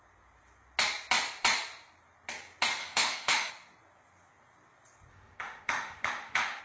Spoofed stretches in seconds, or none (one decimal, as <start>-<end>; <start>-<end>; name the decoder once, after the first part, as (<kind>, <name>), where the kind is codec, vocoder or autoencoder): 2.8-3.5 (autoencoder, DAC-VAE); 5.1-6.6